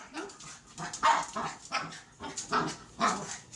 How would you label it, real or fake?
real